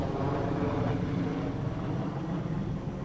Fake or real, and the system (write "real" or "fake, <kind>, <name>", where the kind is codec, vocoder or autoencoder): real